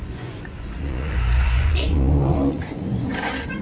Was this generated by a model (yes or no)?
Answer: yes